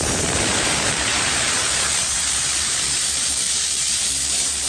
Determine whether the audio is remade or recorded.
remade